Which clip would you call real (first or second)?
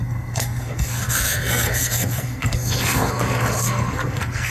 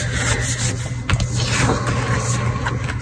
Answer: second